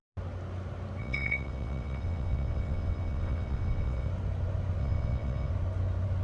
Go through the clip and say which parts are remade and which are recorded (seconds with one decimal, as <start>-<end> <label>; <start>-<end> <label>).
0.0-1.0 recorded; 1.0-4.1 remade; 4.1-4.8 recorded; 4.8-5.5 remade; 5.5-6.2 recorded